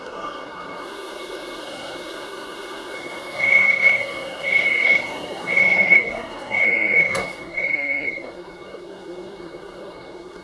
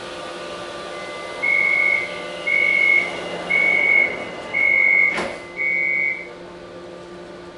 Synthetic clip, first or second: first